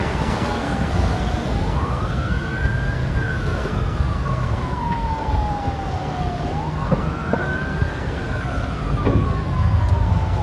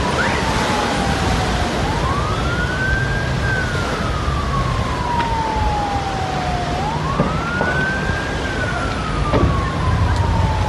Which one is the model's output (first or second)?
first